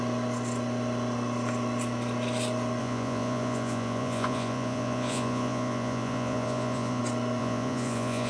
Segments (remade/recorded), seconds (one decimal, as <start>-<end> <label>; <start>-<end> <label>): 0.0-2.8 recorded; 2.8-7.0 remade; 7.0-7.4 recorded; 7.4-8.3 remade